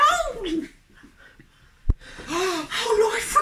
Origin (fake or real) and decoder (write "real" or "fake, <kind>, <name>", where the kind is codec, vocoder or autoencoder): real